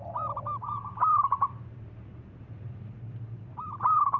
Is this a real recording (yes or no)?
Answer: no